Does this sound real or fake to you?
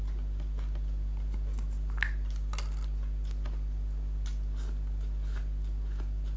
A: real